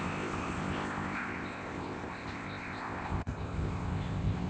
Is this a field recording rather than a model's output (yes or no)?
no